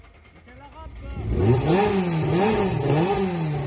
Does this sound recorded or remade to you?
recorded